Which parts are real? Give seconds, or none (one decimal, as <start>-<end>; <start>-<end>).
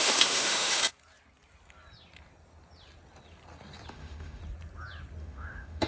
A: 0.8-3.9; 4.4-5.2